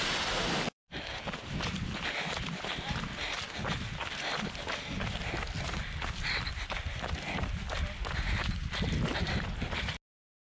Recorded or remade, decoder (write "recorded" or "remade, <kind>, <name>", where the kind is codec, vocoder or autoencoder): recorded